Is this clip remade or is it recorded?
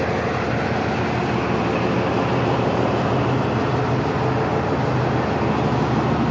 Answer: recorded